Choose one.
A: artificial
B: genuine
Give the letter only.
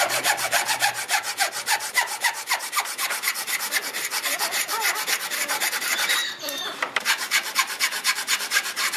A